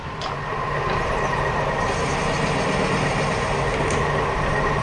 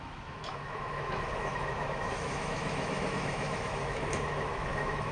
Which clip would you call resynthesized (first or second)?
second